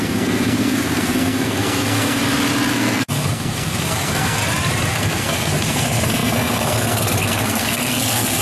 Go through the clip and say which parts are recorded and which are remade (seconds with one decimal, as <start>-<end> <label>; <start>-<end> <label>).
0.0-2.2 remade; 2.2-2.7 recorded; 2.7-4.4 remade; 4.4-4.9 recorded; 4.9-8.4 remade